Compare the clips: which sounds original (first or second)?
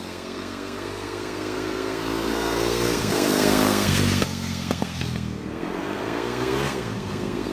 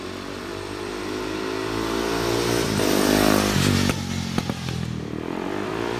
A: second